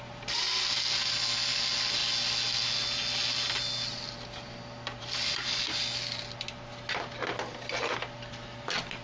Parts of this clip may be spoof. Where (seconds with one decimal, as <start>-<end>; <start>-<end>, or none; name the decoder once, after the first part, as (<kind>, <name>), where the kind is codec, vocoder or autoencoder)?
none